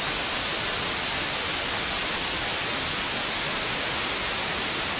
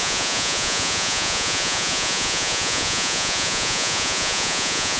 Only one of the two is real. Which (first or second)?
first